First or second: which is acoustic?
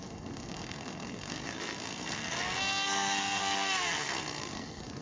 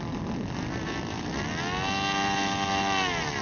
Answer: second